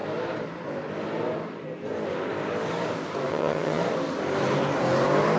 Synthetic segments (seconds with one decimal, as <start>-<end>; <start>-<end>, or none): 3.3-3.8